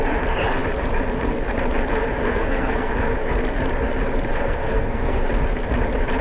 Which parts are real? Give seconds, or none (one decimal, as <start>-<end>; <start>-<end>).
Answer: 0.0-2.2; 2.9-4.3; 5.2-6.2